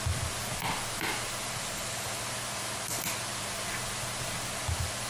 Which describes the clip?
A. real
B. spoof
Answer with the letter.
A